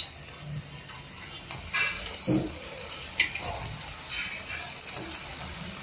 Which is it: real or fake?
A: real